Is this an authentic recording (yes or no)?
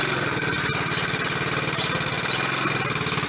yes